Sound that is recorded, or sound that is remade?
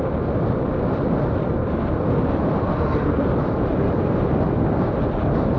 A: recorded